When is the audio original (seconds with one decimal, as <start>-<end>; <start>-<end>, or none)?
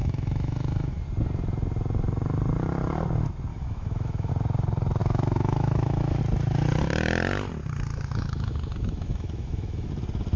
1.0-3.5; 4.3-5.0; 6.2-7.9; 9.9-10.4